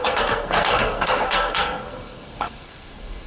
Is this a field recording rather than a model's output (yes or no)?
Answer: no